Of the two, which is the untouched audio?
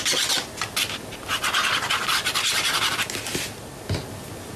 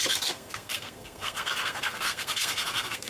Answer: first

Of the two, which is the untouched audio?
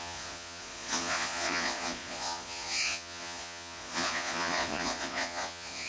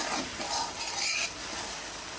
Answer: second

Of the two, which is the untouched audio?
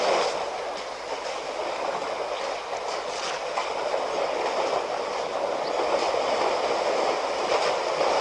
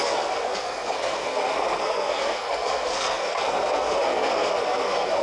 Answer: first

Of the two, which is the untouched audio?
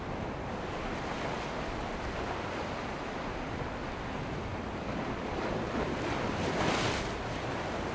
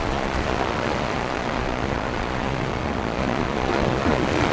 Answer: first